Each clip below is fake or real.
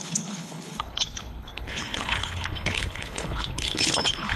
fake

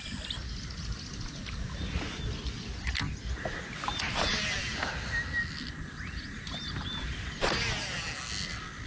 real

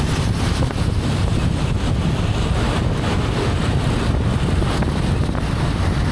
real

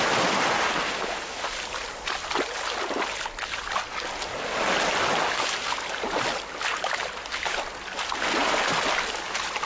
real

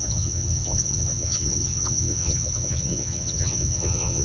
fake